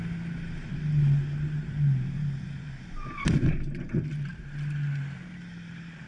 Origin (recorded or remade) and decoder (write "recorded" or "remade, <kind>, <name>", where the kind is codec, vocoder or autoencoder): recorded